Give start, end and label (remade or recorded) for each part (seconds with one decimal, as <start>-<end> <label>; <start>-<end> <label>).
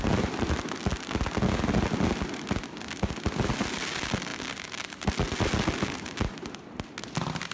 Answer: 0.0-7.5 recorded